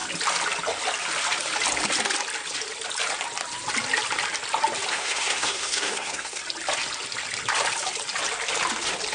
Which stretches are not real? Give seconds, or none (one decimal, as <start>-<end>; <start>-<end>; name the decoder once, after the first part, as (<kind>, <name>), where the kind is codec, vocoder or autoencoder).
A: 4.9-6.4 (codec, SNAC)